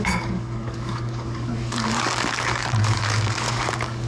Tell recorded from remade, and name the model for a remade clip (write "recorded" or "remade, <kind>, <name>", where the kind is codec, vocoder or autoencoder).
remade, codec, DAC